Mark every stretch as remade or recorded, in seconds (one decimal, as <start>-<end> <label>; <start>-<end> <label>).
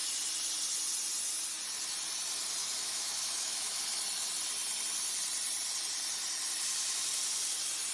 0.0-2.6 recorded; 2.6-3.8 remade; 3.8-7.9 recorded